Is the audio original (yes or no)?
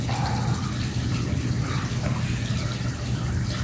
yes